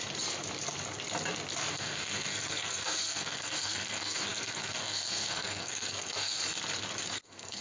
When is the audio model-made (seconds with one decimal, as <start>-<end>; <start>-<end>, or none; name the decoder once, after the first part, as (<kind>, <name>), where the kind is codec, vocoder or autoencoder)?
1.7-6.4 (codec, SNAC); 7.0-7.6